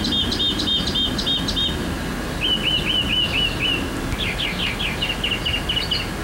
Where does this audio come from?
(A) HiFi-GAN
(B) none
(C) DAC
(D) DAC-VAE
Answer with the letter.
B